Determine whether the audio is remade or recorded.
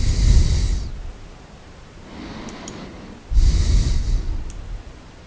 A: recorded